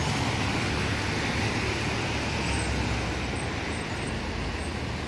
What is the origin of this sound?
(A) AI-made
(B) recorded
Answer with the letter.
B